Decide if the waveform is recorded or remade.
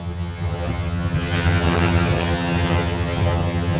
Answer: remade